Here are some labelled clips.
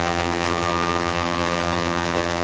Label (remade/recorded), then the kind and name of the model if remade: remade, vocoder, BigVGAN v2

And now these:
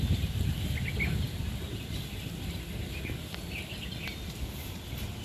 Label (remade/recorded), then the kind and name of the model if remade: recorded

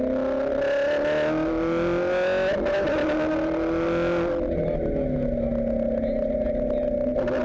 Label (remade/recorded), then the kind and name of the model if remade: recorded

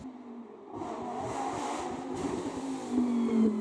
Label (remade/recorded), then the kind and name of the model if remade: recorded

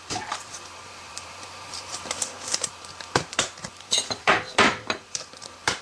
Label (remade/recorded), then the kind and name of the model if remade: remade, vocoder, BigVGAN v2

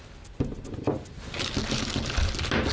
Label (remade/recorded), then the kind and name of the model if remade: recorded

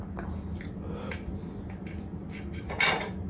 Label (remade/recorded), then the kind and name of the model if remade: recorded